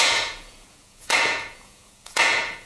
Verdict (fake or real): fake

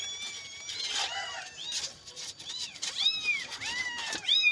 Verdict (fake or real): real